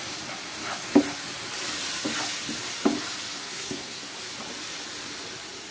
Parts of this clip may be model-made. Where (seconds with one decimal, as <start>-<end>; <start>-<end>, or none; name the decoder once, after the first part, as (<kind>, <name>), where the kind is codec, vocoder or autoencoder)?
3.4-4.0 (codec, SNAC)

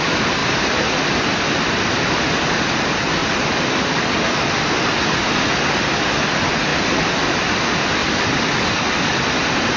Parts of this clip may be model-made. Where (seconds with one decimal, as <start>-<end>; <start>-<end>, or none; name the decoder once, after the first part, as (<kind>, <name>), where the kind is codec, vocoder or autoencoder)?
0.4-2.2 (vocoder, BigVGAN v2); 3.2-4.7; 8.0-9.8

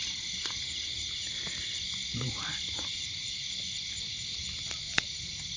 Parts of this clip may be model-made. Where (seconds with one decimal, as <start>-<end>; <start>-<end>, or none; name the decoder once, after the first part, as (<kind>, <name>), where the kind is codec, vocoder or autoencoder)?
2.1-5.6 (vocoder, BigVGAN v2)